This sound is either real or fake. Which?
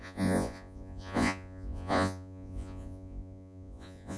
fake